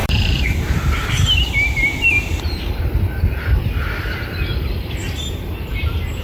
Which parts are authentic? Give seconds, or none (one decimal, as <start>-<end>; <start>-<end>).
3.7-4.5